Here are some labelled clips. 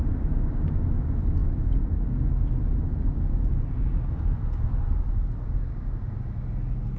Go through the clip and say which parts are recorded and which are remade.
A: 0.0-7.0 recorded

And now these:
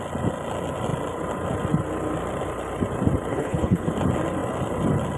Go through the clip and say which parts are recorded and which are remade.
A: 0.0-3.3 recorded; 3.3-3.9 remade; 3.9-5.2 recorded